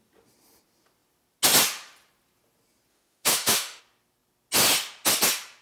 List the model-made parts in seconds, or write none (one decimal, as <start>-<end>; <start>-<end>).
2.9-3.8